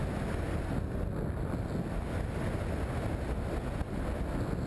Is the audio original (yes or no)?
yes